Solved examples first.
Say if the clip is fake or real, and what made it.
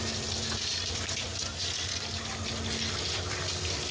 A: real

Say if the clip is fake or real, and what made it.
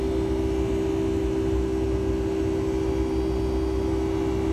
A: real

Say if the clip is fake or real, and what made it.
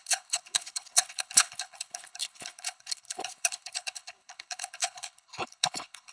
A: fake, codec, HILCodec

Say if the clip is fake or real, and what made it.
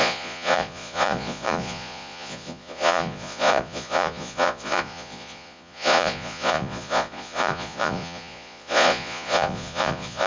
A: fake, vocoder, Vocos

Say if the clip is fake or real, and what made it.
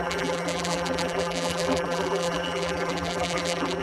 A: fake, vocoder, BigVGAN v2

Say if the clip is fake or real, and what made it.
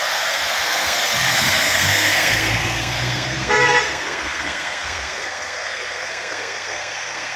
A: fake, codec, SNAC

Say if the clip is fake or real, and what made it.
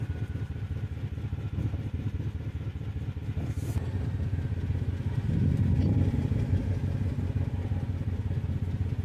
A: real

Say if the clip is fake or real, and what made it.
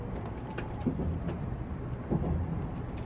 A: real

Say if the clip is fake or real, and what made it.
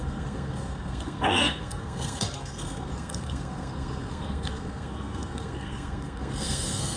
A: fake, codec, SNAC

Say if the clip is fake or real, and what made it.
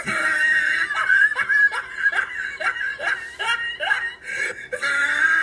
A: real